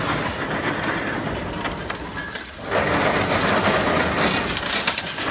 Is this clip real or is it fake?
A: real